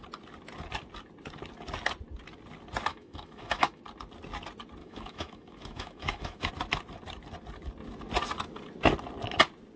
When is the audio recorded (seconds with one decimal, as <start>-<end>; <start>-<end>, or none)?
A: 0.0-2.9; 3.8-4.8; 6.5-9.8